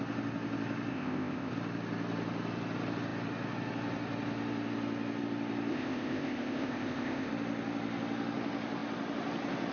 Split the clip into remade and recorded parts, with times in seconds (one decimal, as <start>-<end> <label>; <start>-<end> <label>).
0.0-0.9 recorded; 0.9-1.5 remade; 1.5-5.7 recorded; 5.7-7.3 remade; 7.3-9.7 recorded